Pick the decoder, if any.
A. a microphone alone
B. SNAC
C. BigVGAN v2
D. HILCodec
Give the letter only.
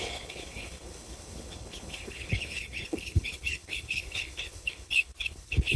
D